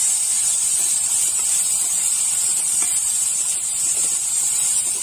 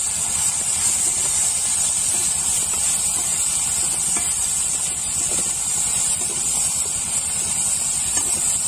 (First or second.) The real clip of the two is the second